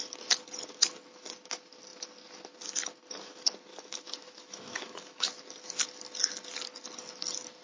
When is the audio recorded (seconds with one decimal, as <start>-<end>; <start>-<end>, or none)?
0.0-3.7; 5.3-7.6